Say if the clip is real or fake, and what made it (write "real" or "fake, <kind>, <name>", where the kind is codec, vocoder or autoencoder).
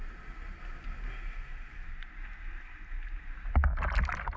real